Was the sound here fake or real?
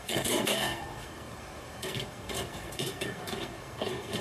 fake